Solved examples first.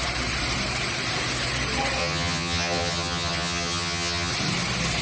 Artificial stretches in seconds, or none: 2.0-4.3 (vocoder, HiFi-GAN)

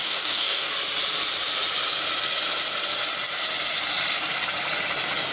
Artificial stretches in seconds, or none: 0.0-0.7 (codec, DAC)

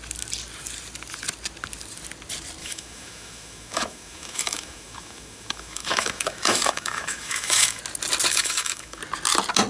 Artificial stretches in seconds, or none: 2.6-7.8 (autoencoder, DAC-VAE); 8.3-9.0